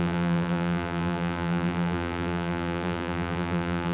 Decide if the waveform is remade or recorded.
remade